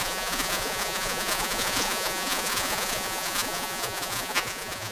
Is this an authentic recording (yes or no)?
no